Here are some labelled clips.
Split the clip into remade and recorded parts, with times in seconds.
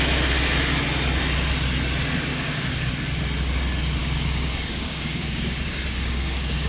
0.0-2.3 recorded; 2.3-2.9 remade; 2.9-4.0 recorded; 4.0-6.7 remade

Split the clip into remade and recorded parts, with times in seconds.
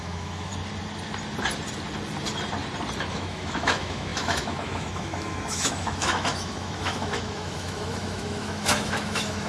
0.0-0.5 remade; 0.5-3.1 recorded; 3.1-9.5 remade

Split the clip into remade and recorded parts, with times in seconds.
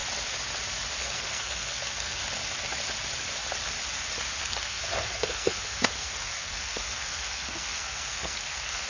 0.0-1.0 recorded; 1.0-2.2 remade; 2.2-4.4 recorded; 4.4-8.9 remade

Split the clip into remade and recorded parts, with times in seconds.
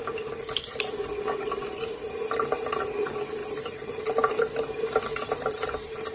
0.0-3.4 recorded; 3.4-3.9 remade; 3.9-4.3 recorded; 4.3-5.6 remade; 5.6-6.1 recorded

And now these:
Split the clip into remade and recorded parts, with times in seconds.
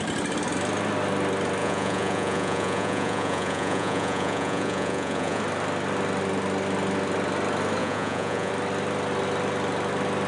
0.0-1.6 recorded; 1.6-5.4 remade; 5.4-7.8 recorded; 7.8-8.5 remade; 8.5-10.3 recorded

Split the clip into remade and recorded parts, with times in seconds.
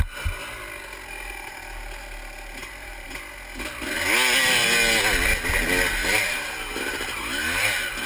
0.0-2.6 recorded; 2.6-3.1 remade; 3.1-6.0 recorded; 6.0-7.2 remade; 7.2-8.1 recorded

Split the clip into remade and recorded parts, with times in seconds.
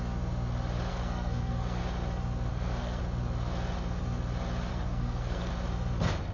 0.0-0.9 recorded; 0.9-1.8 remade; 1.8-2.5 recorded; 2.5-3.0 remade; 3.0-4.7 recorded; 4.7-5.5 remade; 5.5-6.3 recorded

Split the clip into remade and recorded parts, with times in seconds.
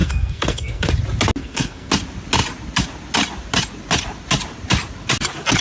0.0-0.9 remade; 0.9-1.4 recorded; 1.4-1.9 remade; 1.9-5.6 recorded